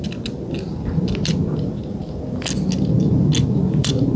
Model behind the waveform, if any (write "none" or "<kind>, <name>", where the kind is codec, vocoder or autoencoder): none